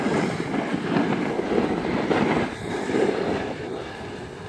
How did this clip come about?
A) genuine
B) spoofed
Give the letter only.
A